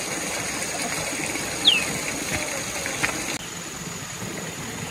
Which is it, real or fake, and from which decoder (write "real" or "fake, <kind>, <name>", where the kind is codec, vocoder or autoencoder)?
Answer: real